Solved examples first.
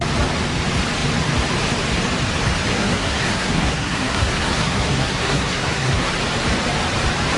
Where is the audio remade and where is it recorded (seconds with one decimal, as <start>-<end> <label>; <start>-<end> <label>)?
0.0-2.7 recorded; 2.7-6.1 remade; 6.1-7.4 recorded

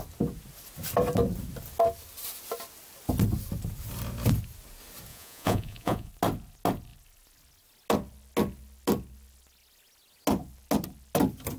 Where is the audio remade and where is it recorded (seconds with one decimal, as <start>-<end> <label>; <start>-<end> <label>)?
0.0-5.1 recorded; 5.1-6.1 remade; 6.1-11.6 recorded

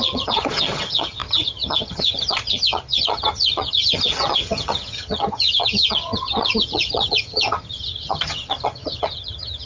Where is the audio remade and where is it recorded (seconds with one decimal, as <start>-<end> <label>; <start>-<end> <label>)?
0.0-9.7 remade

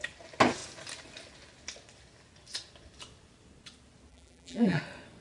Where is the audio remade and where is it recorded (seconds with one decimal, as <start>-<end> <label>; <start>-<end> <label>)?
0.0-4.1 recorded; 4.1-4.8 remade; 4.8-5.2 recorded

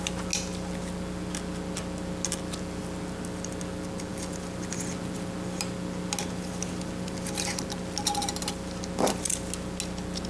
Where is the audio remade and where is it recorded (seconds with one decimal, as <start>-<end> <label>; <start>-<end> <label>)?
0.0-10.3 recorded

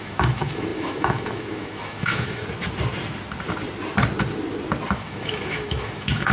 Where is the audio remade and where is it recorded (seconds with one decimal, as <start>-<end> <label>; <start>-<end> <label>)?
0.0-2.4 remade; 2.4-5.0 recorded; 5.0-6.3 remade